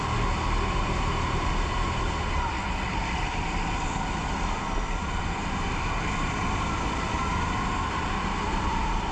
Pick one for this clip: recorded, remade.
recorded